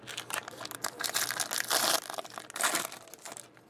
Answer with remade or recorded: recorded